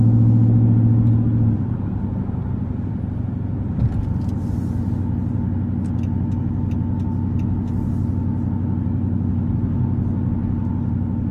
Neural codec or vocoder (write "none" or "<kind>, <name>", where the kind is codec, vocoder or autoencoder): none